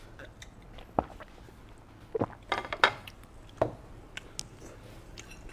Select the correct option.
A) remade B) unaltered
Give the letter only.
B